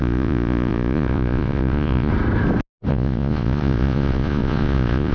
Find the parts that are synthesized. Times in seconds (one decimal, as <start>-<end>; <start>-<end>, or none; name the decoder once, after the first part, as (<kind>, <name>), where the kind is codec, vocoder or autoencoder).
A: 0.0-2.1 (vocoder, Vocos); 2.9-5.1